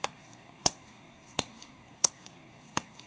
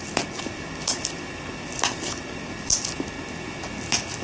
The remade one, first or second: first